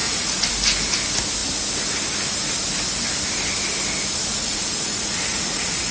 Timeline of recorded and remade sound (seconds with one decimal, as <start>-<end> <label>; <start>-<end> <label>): 0.0-0.5 remade; 0.5-4.3 recorded; 4.3-5.9 remade